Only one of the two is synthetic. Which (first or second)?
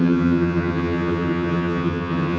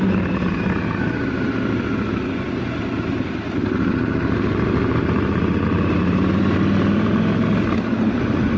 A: first